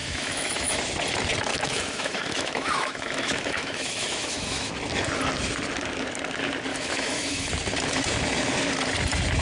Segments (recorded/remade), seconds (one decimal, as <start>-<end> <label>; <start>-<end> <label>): 0.0-0.8 remade; 0.8-1.5 recorded; 1.5-4.7 remade; 4.7-6.7 recorded; 6.7-7.5 remade; 7.5-9.4 recorded